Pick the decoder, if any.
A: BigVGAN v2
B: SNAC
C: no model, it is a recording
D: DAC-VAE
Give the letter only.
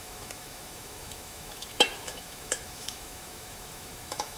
D